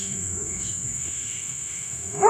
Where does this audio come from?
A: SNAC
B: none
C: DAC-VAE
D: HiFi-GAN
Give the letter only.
C